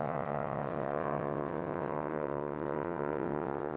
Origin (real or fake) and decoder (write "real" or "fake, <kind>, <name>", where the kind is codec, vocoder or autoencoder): fake, vocoder, WaveNeXt